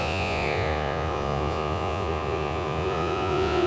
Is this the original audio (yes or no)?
no